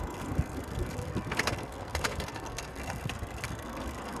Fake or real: fake